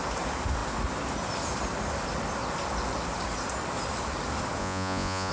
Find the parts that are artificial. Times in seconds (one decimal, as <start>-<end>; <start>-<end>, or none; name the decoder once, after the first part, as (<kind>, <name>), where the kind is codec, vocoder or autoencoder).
4.6-5.3 (vocoder, Vocos)